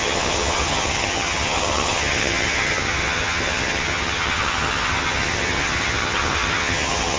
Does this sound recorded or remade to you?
remade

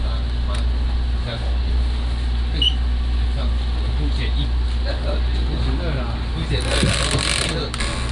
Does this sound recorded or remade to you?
recorded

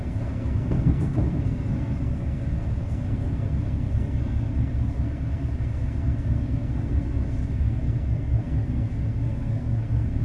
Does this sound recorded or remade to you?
remade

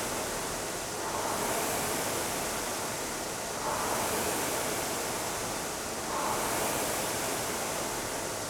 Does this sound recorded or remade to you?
recorded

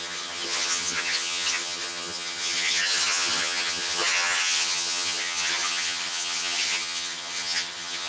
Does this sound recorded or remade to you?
remade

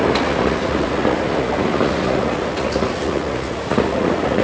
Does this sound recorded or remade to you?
remade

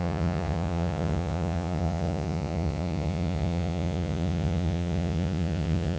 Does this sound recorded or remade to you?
remade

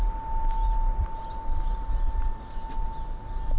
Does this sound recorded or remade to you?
recorded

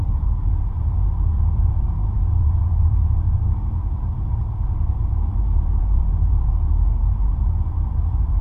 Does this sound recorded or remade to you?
remade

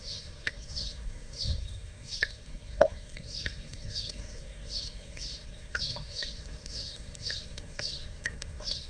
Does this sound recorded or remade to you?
remade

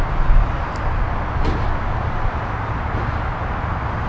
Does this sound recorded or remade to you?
recorded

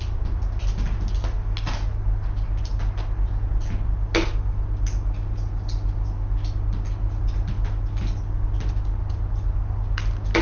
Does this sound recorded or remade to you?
recorded